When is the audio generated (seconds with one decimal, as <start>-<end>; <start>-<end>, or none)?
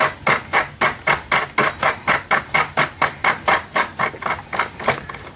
1.6-2.3; 3.2-4.1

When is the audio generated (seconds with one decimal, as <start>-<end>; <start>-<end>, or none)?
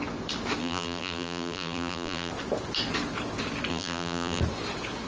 0.6-2.3; 3.7-4.4